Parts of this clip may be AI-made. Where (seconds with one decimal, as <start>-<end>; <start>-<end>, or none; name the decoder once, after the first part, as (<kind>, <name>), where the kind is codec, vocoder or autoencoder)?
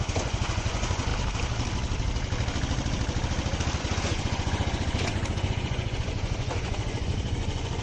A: 0.0-1.1 (vocoder, Vocos); 3.8-7.8